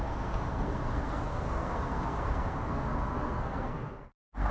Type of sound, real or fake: fake